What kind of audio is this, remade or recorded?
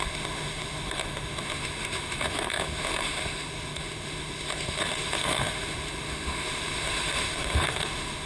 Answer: remade